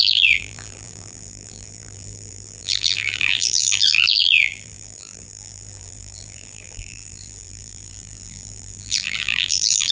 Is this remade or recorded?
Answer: remade